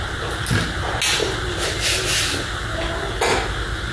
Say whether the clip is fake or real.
real